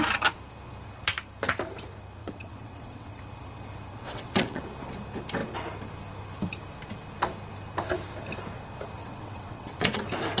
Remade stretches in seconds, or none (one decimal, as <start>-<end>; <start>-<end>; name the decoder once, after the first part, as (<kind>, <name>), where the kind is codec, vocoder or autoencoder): 2.2-3.2 (vocoder, WaveNeXt); 3.9-4.6; 9.0-10.0